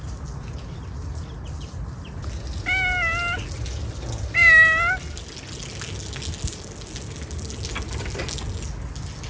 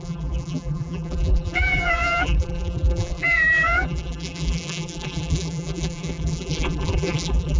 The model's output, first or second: second